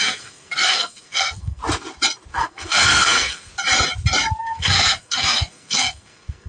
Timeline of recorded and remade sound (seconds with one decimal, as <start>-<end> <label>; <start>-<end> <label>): 0.0-1.6 remade; 1.6-2.3 recorded; 2.3-3.5 remade; 3.5-4.4 recorded; 4.4-6.5 remade